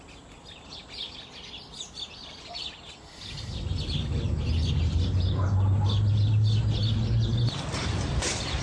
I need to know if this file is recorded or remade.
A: recorded